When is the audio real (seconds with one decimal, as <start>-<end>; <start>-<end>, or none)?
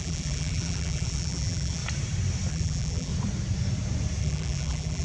1.8-2.5; 3.1-4.2